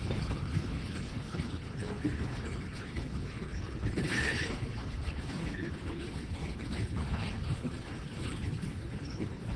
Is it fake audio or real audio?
fake